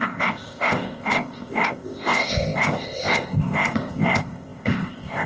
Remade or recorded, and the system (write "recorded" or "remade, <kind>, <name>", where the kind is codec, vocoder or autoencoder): remade, codec, ZipCodec